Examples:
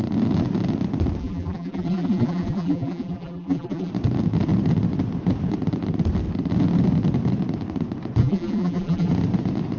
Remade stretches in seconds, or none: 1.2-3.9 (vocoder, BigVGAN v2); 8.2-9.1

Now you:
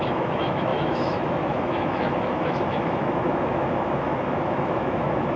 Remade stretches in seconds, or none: 0.0-5.4 (autoencoder, DAC-VAE)

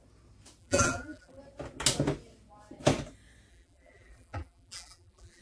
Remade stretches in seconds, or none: 0.6-1.4 (vocoder, BigVGAN v2); 3.5-5.4

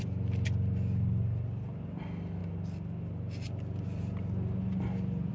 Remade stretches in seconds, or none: none

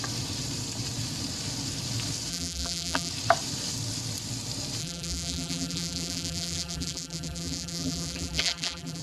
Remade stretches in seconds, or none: 2.3-3.1 (vocoder, BigVGAN v2); 4.8-9.0

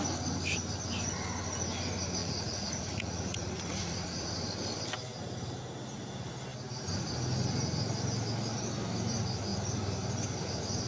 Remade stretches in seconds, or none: 2.2-4.3 (vocoder, Vocos)